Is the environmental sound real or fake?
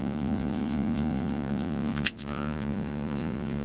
fake